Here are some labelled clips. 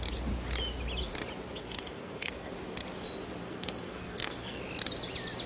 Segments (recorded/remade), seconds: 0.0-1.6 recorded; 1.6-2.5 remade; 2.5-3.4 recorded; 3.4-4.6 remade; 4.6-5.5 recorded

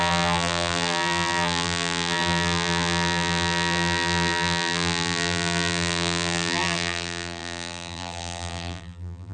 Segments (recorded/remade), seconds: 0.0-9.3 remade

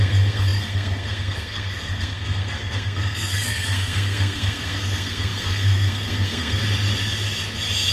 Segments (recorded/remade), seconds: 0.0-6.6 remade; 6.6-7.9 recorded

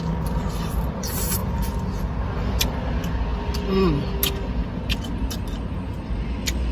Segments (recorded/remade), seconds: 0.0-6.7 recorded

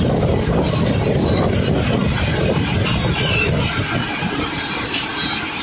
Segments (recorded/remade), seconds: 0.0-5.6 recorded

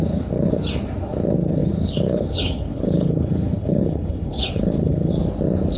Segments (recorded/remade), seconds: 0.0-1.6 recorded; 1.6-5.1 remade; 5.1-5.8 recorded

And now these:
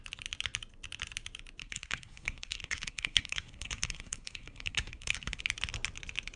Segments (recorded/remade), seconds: 0.0-1.6 recorded; 1.6-5.4 remade; 5.4-6.4 recorded